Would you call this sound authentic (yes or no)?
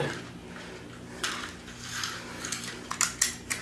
yes